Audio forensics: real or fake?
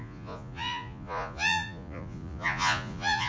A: fake